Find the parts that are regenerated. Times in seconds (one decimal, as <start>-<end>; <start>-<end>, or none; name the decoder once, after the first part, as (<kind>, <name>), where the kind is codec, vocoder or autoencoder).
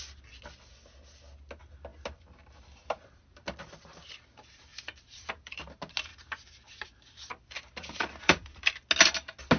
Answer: 4.7-5.6 (vocoder, BigVGAN v2); 6.1-8.8